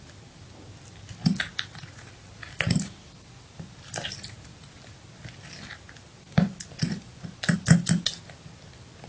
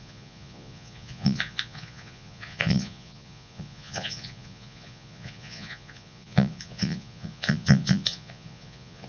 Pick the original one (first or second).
first